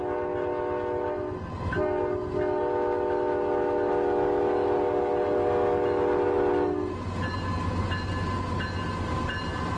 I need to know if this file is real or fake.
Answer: real